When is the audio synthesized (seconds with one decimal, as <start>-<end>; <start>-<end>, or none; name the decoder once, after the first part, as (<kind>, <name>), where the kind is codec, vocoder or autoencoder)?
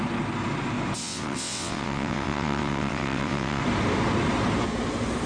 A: 1.0-3.6 (vocoder, WaveNeXt)